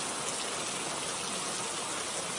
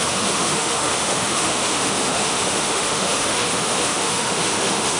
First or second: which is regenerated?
second